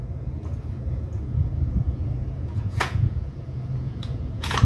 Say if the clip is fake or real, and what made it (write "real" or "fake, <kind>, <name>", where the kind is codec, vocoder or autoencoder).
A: fake, vocoder, Vocos